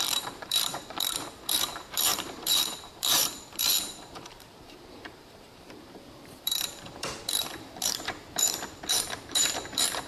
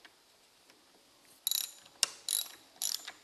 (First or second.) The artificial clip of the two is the first